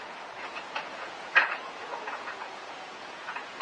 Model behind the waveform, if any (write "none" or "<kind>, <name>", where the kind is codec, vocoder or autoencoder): vocoder, Vocos